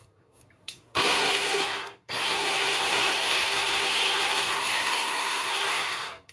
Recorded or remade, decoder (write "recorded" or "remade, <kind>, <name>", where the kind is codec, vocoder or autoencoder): remade, codec, SNAC